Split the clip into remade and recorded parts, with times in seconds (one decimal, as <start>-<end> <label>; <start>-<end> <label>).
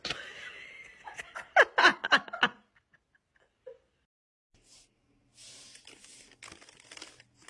0.0-7.5 recorded